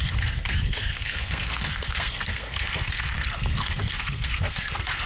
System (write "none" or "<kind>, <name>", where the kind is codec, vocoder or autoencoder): codec, SNAC